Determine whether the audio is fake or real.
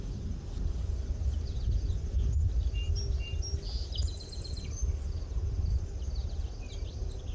real